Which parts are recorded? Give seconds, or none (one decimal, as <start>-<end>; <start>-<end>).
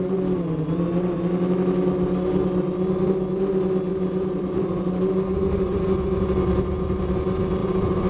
0.0-3.9; 7.0-7.6